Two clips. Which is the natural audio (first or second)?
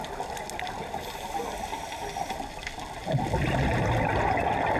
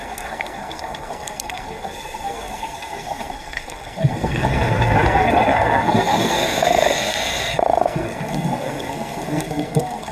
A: first